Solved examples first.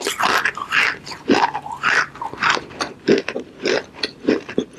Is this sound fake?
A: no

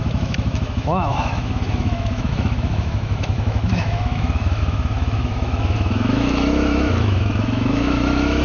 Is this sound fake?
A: yes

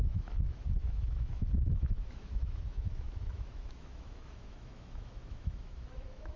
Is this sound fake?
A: yes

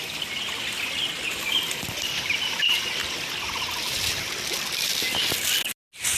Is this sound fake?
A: no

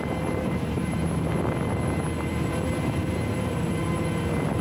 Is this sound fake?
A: no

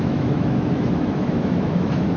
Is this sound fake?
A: yes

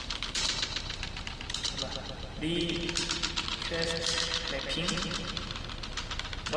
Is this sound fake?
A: no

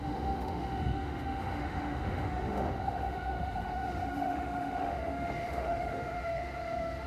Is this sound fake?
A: yes